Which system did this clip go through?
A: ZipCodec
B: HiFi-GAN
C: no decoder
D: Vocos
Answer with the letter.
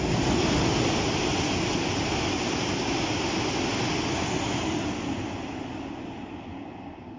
C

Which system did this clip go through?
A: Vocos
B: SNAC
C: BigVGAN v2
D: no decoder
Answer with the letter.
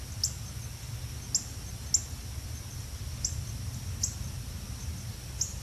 D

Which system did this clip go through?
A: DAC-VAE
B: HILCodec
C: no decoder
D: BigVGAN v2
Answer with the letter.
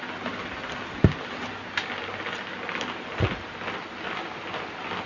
C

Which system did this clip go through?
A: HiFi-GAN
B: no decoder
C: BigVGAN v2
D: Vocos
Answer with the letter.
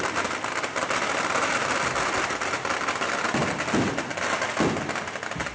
B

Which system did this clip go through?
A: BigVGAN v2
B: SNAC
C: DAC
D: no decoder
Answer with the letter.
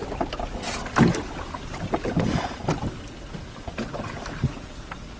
D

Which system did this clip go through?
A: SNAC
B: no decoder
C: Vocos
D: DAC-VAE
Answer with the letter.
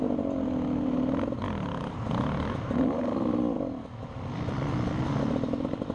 B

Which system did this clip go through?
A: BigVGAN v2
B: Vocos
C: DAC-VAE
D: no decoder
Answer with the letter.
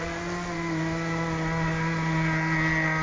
D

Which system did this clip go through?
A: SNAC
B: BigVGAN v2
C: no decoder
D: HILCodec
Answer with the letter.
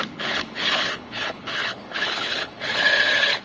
D